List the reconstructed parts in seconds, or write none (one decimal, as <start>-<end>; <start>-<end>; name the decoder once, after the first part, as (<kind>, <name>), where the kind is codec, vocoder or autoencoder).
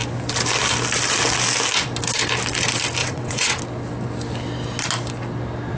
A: 3.0-3.6 (vocoder, WaveNeXt)